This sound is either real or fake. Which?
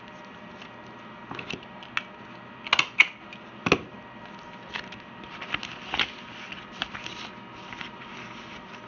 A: real